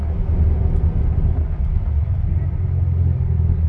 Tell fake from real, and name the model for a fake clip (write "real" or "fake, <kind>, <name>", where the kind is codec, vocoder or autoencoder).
real